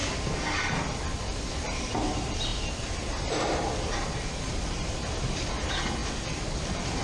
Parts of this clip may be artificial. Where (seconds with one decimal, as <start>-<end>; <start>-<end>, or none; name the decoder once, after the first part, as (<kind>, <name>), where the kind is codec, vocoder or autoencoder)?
6.0-7.0 (vocoder, BigVGAN v2)